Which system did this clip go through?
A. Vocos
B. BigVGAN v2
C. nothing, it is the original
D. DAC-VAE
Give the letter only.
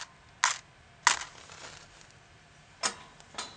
C